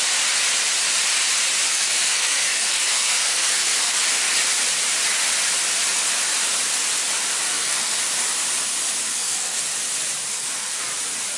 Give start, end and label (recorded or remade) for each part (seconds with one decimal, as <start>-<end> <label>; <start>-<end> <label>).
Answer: 0.0-1.7 recorded; 1.7-4.0 remade; 4.0-7.5 recorded; 7.5-8.0 remade; 8.0-9.1 recorded; 9.1-9.6 remade; 9.6-10.3 recorded; 10.3-10.8 remade; 10.8-11.4 recorded